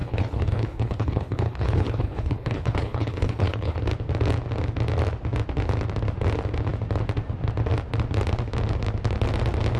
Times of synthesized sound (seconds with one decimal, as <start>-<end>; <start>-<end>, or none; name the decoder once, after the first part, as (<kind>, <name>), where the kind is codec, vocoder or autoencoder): 0.0-3.8 (codec, HILCodec)